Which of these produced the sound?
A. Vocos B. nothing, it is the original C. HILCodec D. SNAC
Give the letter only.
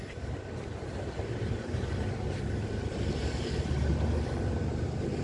B